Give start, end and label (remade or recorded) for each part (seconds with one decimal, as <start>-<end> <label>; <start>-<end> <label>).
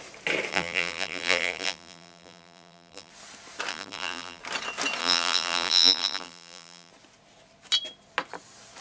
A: 0.0-0.5 recorded; 0.5-3.1 remade; 3.1-3.7 recorded; 3.7-4.4 remade; 4.4-5.0 recorded; 5.0-6.9 remade; 6.9-8.8 recorded